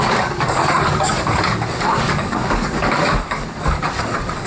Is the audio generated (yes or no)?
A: yes